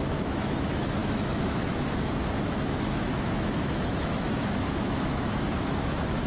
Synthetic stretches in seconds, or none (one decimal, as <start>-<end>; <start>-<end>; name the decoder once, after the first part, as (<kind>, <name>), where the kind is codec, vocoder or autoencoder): 0.0-6.3 (autoencoder, DAC-VAE)

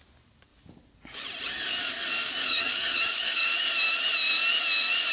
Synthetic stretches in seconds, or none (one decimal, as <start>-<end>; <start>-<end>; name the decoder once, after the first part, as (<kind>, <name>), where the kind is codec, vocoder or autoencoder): 2.5-3.5 (vocoder, HiFi-GAN)

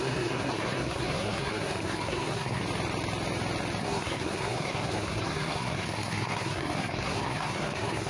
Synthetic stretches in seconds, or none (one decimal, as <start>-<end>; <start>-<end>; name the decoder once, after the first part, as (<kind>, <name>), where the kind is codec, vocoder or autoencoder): 0.0-2.6 (codec, SNAC); 3.8-8.1

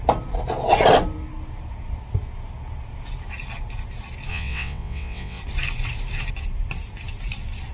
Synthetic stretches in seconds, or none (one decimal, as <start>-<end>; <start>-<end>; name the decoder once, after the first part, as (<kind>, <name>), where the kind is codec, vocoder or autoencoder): 4.3-5.4 (vocoder, WaveNeXt)